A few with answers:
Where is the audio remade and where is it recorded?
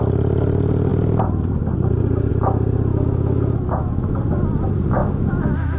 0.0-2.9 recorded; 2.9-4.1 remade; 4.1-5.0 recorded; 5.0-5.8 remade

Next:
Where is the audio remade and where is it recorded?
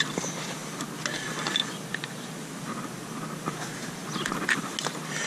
0.0-5.3 recorded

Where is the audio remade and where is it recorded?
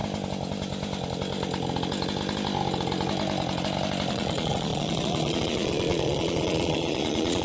0.0-4.1 recorded; 4.1-7.4 remade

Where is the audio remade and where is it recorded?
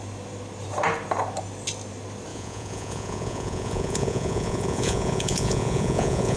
0.0-2.3 recorded; 2.3-6.4 remade